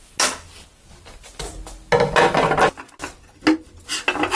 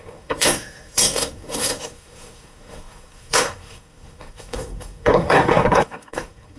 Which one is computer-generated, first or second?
second